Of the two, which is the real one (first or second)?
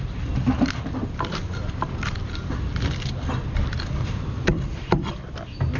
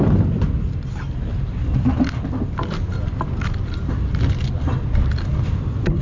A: second